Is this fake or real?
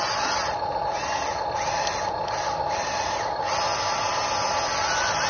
real